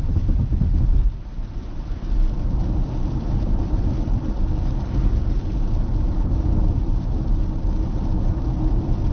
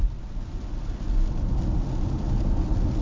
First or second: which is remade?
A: first